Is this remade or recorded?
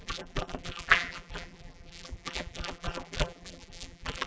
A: remade